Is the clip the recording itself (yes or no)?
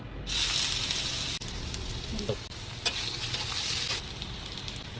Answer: yes